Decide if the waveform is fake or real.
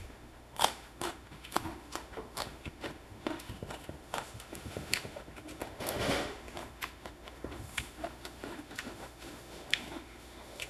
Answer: fake